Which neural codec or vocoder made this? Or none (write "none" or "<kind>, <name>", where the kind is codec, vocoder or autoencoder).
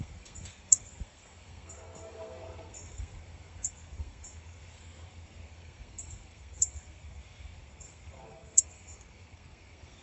codec, SNAC